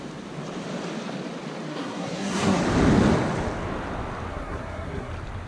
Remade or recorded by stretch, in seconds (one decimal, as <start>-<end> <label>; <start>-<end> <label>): 0.0-1.7 recorded; 1.7-2.6 remade; 2.6-4.3 recorded; 4.3-5.1 remade; 5.1-5.5 recorded